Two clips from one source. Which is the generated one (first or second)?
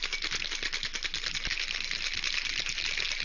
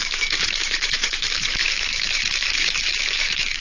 second